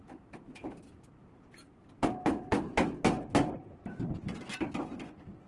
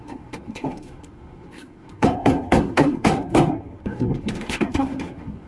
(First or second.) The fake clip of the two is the second